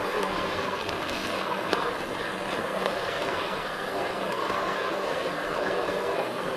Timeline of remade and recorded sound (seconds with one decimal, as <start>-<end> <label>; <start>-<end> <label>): 0.0-1.9 remade; 1.9-2.6 recorded; 2.6-6.6 remade